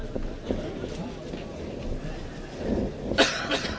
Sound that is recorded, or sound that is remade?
recorded